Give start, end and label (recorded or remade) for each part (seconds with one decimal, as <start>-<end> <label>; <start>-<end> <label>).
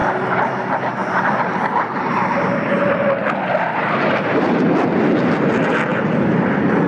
0.0-6.9 recorded